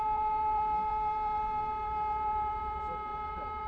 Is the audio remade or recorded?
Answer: remade